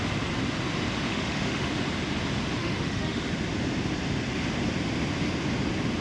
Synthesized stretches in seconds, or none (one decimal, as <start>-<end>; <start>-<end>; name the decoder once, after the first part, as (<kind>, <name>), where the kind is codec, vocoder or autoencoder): 1.1-1.7 (autoencoder, DAC-VAE); 2.6-3.3

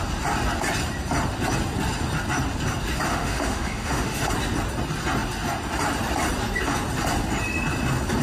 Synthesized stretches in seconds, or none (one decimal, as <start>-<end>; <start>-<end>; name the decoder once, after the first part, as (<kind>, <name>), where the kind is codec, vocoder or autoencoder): 3.1-4.3 (autoencoder, DAC-VAE)

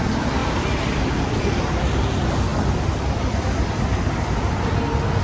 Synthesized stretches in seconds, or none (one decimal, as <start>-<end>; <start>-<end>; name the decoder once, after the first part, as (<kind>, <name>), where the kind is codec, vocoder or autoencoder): none

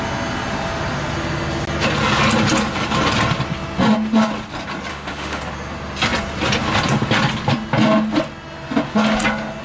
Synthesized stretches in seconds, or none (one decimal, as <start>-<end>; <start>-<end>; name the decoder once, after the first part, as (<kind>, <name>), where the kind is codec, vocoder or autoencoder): 4.9-5.4 (autoencoder, DAC-VAE)

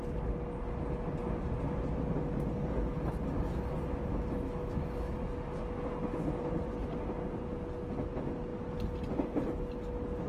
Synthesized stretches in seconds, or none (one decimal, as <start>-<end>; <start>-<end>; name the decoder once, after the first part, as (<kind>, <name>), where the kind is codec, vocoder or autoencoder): 4.1-5.2 (autoencoder, DAC-VAE)

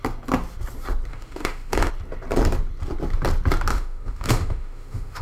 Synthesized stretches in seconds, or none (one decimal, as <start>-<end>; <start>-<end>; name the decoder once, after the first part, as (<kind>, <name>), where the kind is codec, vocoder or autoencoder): 1.1-1.9 (autoencoder, DAC-VAE); 3.7-5.2